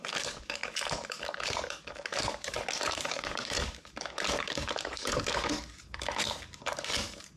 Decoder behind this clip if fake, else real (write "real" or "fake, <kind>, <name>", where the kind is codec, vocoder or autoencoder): fake, codec, DAC